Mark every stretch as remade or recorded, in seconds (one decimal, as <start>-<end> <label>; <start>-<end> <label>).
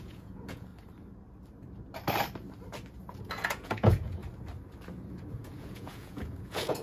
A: 0.0-0.7 remade; 0.7-3.2 recorded; 3.2-4.2 remade; 4.2-5.2 recorded; 5.2-6.8 remade